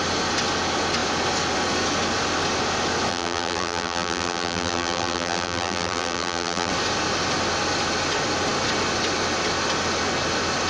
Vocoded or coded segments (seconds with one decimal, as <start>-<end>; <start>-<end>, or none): 3.1-6.7